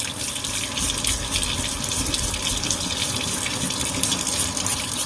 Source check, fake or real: real